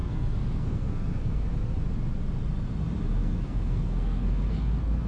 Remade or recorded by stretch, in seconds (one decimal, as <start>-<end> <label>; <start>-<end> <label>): 0.0-1.5 remade; 1.5-3.2 recorded; 3.2-5.1 remade